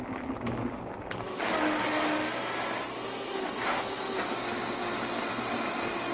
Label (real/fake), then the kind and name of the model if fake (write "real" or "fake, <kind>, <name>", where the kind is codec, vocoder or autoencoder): real